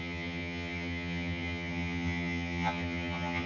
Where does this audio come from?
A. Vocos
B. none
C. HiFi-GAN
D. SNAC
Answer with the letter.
C